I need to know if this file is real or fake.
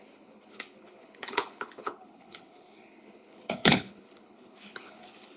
fake